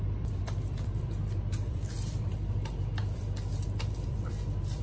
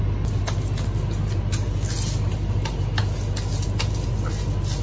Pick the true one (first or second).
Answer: second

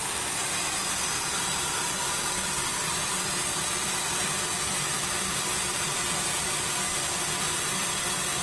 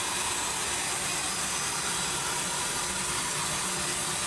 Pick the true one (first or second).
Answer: second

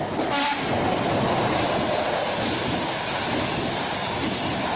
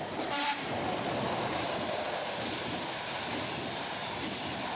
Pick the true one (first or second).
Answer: first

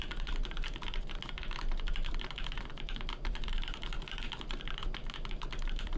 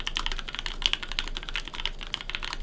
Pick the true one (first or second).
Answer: second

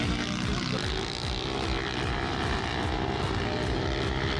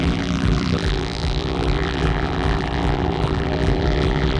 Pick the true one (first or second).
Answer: first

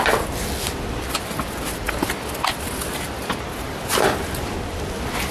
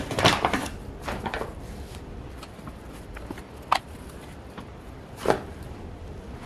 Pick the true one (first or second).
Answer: first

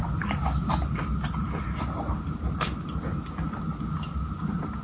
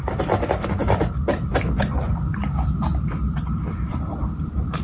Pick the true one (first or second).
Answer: first